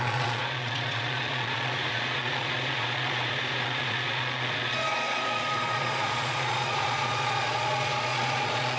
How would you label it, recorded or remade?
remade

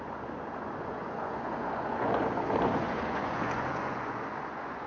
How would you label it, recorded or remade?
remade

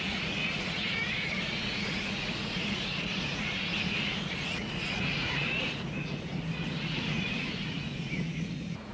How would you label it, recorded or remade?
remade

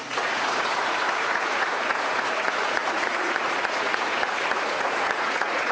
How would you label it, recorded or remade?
remade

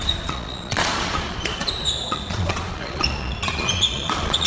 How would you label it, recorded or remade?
remade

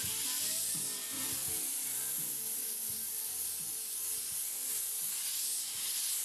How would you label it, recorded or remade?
recorded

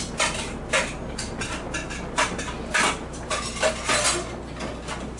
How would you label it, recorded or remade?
recorded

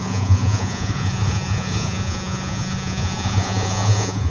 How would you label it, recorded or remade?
remade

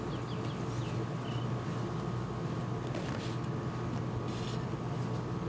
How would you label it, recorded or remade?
recorded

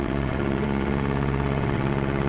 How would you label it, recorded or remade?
remade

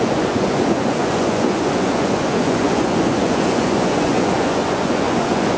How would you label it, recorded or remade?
remade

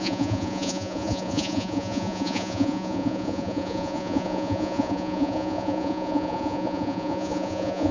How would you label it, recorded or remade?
remade